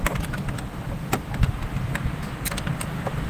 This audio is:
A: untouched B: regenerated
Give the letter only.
A